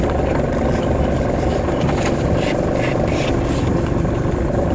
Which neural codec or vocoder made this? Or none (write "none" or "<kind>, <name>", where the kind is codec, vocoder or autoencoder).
none